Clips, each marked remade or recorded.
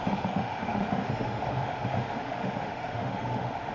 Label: remade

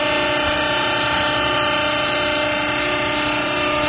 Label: recorded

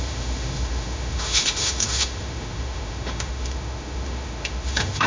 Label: remade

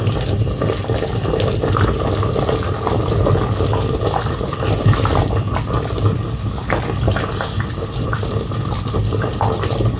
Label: recorded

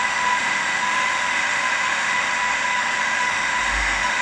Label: remade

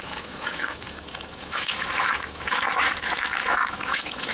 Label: remade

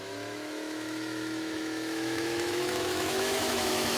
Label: remade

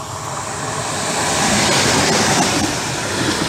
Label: recorded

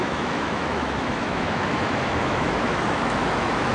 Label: remade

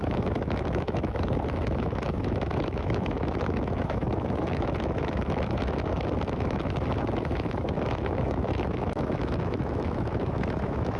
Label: remade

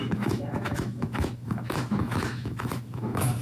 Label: remade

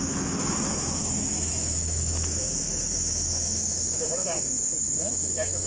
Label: remade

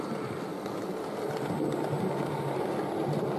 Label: recorded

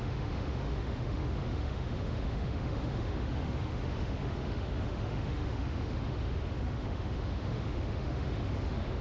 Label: remade